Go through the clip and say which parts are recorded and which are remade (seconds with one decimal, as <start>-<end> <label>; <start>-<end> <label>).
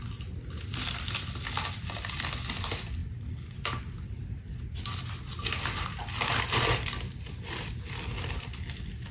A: 0.0-9.1 recorded